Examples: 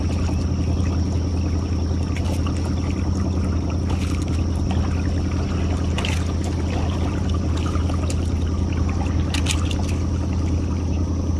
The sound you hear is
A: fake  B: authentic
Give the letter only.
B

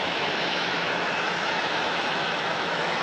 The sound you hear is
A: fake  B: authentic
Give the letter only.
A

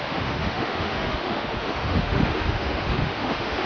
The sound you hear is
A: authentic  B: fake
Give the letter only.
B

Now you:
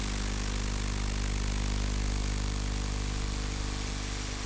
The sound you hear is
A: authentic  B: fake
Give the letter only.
A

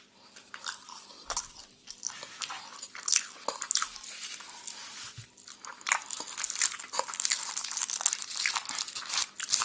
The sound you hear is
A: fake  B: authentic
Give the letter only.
B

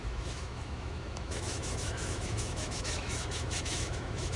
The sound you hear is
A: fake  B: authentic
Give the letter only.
A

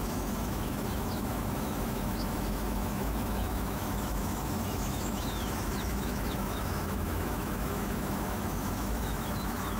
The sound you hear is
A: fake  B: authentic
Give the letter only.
A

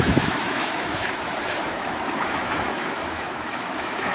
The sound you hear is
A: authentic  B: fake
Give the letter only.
B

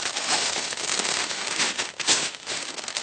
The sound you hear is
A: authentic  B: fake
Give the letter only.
B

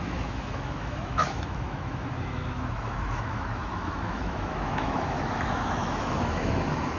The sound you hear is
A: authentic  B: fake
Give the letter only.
B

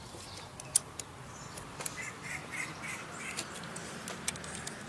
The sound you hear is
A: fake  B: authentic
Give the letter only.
B